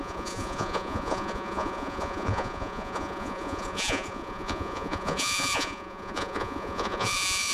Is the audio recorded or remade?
remade